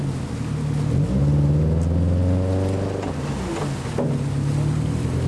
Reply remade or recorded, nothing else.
recorded